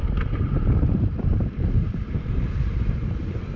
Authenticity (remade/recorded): remade